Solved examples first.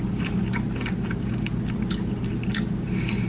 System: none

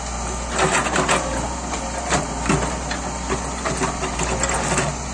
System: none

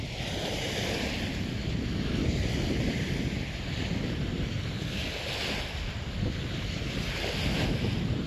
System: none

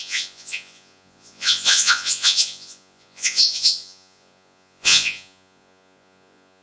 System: vocoder, Vocos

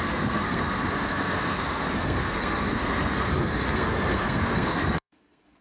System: codec, SNAC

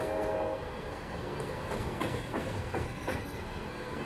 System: codec, SNAC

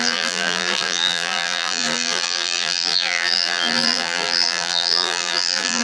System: vocoder, BigVGAN v2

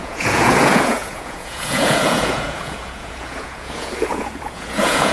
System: vocoder, Vocos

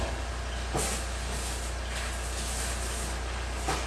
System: none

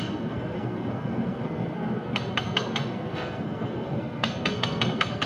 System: codec, SNAC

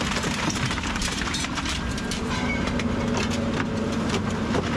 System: vocoder, BigVGAN v2